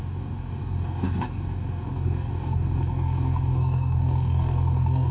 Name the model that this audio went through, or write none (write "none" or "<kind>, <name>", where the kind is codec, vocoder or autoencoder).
codec, DAC